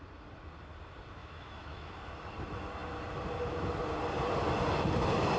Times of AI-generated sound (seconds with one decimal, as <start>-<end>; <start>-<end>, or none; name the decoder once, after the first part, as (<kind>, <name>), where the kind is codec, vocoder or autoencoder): 1.2-1.9 (autoencoder, DAC-VAE)